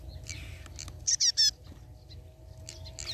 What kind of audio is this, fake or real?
real